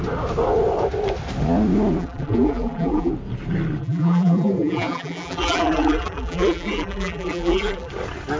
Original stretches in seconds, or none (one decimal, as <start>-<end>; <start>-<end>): 0.0-2.0; 3.1-3.8; 7.9-8.4

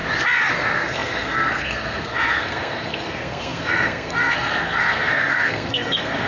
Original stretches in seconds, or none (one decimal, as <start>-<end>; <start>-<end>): 0.0-0.5